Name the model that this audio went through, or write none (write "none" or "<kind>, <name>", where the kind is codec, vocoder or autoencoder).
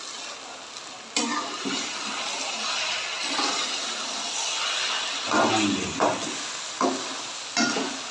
none